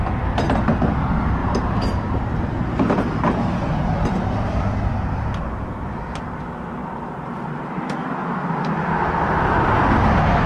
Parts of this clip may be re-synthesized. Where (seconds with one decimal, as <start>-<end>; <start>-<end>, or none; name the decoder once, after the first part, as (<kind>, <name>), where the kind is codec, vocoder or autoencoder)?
1.4-5.5 (vocoder, BigVGAN v2); 6.8-7.8